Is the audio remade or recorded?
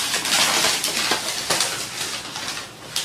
recorded